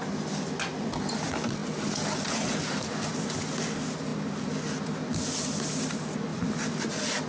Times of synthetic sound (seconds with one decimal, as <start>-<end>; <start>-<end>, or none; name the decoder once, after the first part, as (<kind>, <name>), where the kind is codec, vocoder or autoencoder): 0.0-0.7 (vocoder, BigVGAN v2); 1.6-2.1; 6.3-7.3